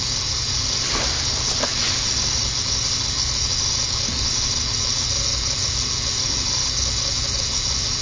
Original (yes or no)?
yes